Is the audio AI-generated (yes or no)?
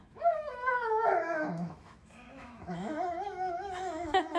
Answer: yes